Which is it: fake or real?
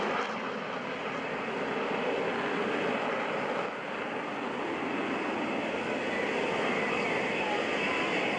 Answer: real